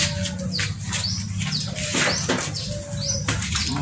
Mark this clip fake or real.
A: real